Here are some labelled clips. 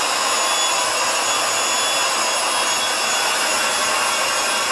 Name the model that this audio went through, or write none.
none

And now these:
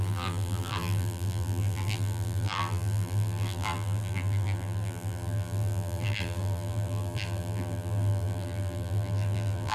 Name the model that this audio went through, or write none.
vocoder, BigVGAN v2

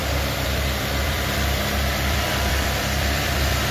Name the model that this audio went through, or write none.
vocoder, BigVGAN v2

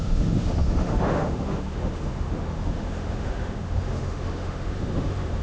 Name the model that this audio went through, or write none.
autoencoder, DAC-VAE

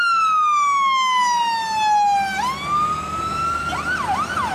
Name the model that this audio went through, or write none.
none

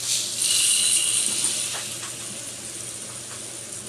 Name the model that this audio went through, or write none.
none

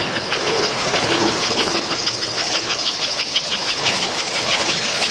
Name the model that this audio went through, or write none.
codec, HILCodec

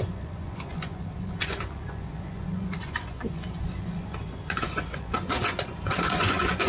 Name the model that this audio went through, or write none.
vocoder, Vocos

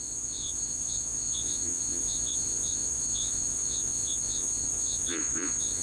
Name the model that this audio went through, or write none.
vocoder, Vocos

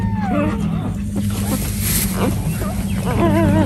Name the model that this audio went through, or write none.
none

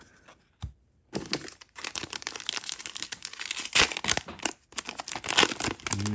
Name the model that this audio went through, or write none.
none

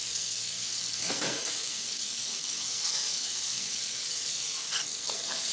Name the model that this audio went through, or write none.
codec, SNAC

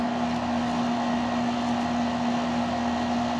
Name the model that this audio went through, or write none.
none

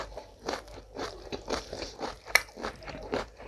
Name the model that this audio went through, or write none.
vocoder, BigVGAN v2